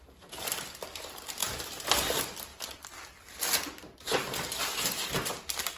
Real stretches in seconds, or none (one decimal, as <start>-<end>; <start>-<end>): 1.4-2.1